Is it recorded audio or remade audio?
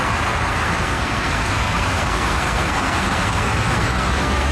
remade